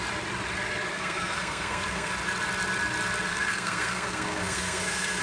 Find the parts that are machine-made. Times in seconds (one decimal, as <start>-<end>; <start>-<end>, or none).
0.9-2.1; 3.3-5.2